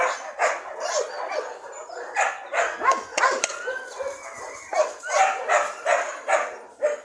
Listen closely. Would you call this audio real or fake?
real